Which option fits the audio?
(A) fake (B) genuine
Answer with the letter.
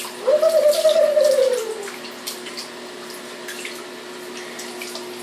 B